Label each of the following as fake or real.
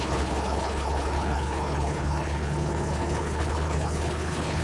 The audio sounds fake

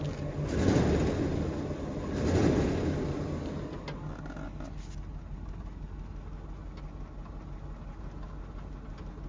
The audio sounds real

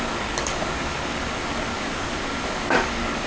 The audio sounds fake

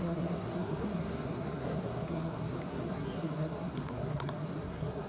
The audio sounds fake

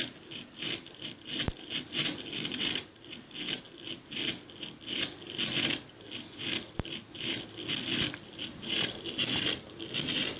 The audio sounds real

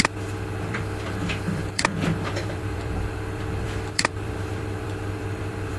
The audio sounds fake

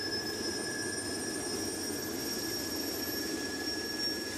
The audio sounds real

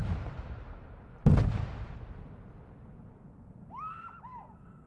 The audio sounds real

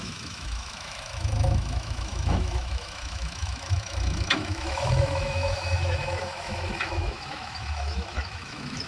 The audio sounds fake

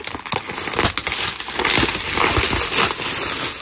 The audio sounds real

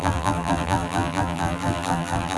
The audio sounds fake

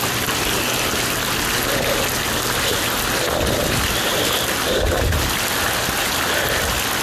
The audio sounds real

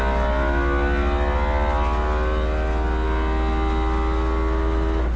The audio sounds real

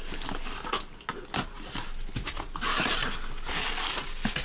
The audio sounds real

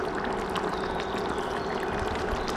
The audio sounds real